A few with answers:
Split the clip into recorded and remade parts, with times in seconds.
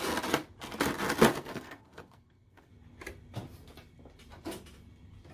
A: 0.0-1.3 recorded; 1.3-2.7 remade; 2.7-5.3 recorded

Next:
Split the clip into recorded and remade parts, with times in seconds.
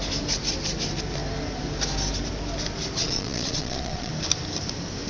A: 0.0-3.0 recorded; 3.0-4.1 remade; 4.1-5.1 recorded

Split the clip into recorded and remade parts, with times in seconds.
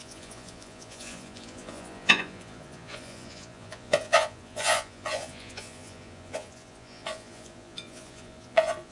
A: 0.0-8.9 remade